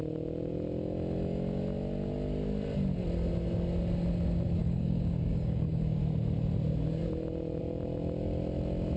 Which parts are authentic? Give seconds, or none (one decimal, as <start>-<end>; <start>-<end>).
0.0-4.6; 6.0-9.0